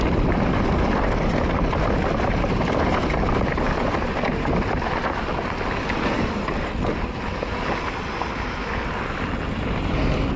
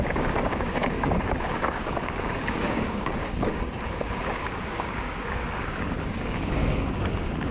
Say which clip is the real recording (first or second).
first